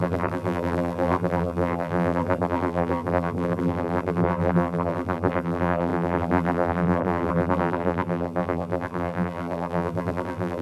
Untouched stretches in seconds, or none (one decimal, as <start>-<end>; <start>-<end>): none